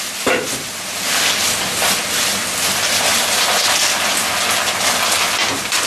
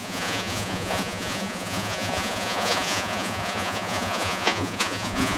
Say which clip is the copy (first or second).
second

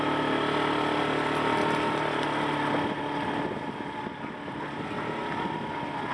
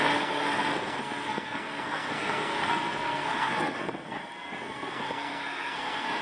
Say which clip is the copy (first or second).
second